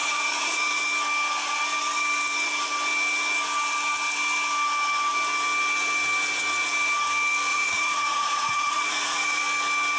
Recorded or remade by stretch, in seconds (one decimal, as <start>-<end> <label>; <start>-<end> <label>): 0.0-0.8 remade; 0.8-7.5 recorded; 7.5-9.4 remade; 9.4-10.0 recorded